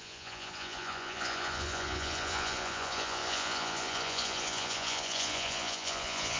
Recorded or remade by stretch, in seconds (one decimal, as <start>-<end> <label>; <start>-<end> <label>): 0.0-6.4 remade